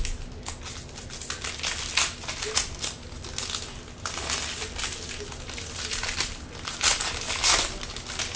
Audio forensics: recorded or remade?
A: recorded